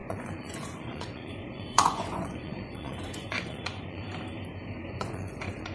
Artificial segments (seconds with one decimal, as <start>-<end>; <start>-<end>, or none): 0.0-4.0; 4.8-5.7